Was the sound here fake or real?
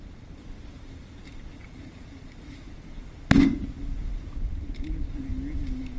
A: real